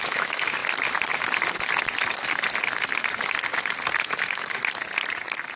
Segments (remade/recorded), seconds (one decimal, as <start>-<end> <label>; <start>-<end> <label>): 0.0-0.6 remade; 0.6-4.0 recorded; 4.0-4.6 remade; 4.6-5.6 recorded